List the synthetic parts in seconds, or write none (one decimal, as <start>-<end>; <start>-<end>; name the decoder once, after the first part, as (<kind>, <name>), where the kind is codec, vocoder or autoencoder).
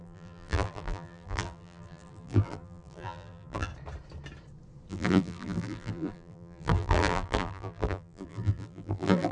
0.0-3.7 (vocoder, BigVGAN v2); 4.9-9.3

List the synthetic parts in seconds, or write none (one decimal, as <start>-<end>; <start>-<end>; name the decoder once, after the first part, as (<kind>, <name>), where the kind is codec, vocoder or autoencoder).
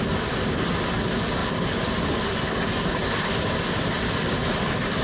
none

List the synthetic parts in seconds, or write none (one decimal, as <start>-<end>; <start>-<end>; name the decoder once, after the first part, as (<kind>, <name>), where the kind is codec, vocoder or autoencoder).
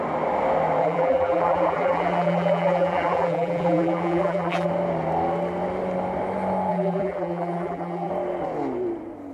0.8-4.7 (vocoder, BigVGAN v2); 6.7-8.1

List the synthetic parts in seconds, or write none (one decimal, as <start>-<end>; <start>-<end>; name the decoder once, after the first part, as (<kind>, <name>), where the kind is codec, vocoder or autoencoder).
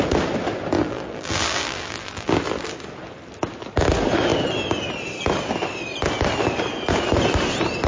0.8-2.3 (vocoder, BigVGAN v2)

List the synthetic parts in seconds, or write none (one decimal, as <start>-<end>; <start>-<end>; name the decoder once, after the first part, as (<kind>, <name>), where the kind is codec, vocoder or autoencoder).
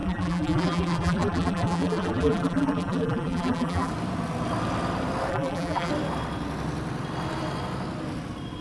0.0-3.9 (vocoder, BigVGAN v2); 5.3-5.9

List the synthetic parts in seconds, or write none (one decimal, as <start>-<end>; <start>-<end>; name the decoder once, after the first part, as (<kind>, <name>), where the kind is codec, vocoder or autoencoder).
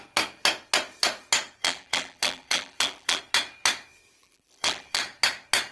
1.6-3.2 (vocoder, BigVGAN v2); 4.2-5.0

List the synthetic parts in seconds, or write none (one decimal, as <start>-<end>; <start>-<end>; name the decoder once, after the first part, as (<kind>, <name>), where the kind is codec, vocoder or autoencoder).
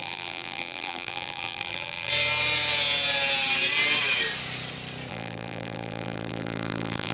0.0-2.1 (vocoder, BigVGAN v2); 5.1-7.1